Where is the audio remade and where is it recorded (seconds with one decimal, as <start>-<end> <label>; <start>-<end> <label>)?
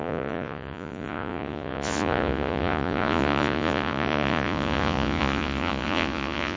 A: 0.0-6.6 remade